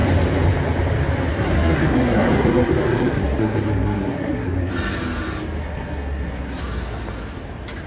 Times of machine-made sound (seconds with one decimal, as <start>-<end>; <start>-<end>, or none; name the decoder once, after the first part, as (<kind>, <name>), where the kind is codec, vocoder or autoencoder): 1.3-4.7 (codec, SNAC); 5.6-6.6